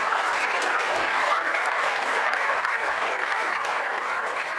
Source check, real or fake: fake